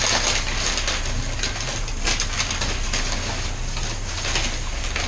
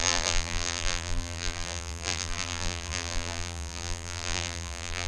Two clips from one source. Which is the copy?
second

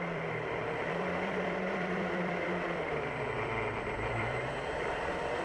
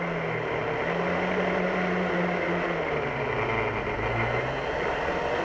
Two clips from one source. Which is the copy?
first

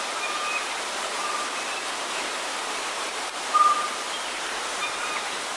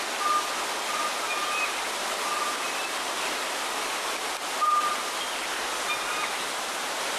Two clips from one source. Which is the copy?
first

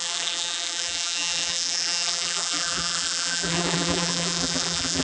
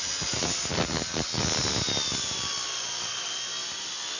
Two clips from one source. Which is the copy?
first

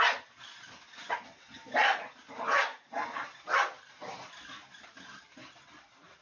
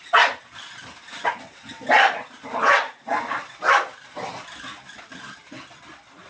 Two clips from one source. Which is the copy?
second